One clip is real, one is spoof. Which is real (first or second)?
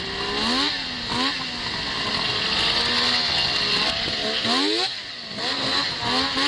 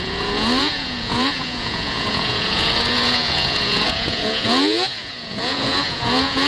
first